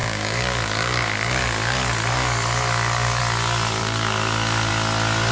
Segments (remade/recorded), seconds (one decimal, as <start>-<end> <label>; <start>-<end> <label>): 0.0-3.2 remade; 3.2-3.8 recorded; 3.8-4.7 remade; 4.7-5.3 recorded

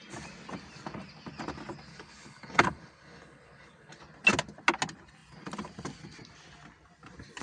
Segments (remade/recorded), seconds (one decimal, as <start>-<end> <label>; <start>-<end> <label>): 0.0-1.9 recorded; 1.9-4.0 remade; 4.0-7.4 recorded

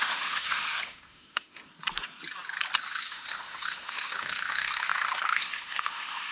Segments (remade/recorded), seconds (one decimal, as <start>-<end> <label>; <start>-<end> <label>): 0.0-1.6 remade; 1.6-2.8 recorded; 2.8-6.3 remade

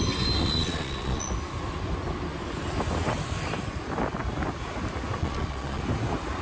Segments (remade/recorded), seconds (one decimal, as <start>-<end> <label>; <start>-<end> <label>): 0.0-0.4 recorded; 0.4-1.3 remade; 1.3-5.2 recorded; 5.2-5.8 remade; 5.8-6.4 recorded